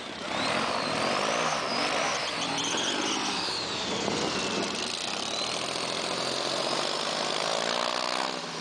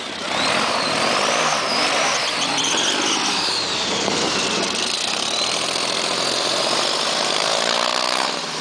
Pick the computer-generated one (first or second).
second